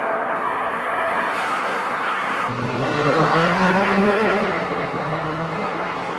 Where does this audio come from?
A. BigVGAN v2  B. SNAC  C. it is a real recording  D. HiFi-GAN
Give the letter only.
B